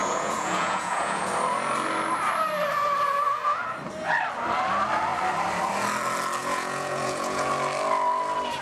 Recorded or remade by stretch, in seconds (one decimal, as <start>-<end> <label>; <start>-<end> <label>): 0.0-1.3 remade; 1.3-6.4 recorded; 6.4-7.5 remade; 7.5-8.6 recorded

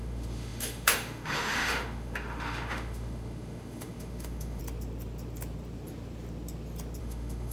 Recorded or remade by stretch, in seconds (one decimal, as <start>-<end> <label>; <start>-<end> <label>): 0.0-4.6 remade; 4.6-7.0 recorded; 7.0-7.5 remade

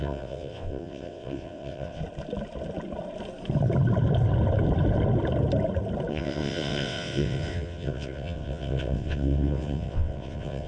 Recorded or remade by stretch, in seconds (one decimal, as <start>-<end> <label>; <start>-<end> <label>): 0.0-2.0 remade; 2.0-6.1 recorded; 6.1-10.7 remade